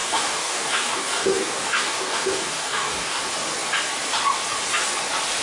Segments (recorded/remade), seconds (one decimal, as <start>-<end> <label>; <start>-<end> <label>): 0.0-3.2 remade; 3.2-5.4 recorded